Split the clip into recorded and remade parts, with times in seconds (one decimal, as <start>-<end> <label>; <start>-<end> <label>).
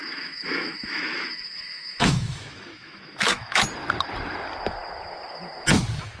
0.0-3.6 remade; 3.6-6.2 recorded